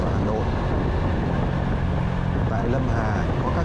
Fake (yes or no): no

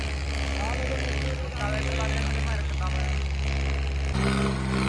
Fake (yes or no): no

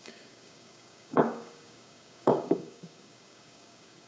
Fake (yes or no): yes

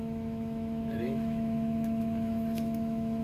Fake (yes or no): yes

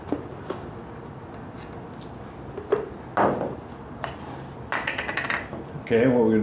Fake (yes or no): no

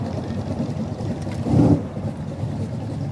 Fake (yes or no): yes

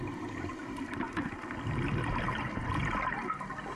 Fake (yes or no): no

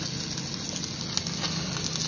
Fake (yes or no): no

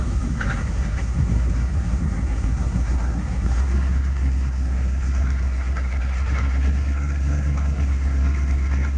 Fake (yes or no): yes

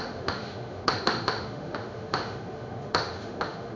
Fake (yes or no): yes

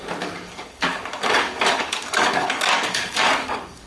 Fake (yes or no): yes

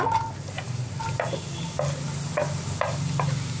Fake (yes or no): no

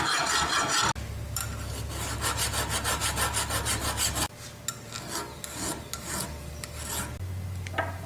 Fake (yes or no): no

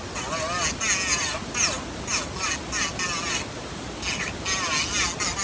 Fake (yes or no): no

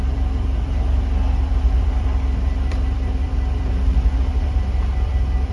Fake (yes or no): yes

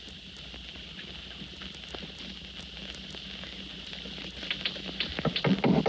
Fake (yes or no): no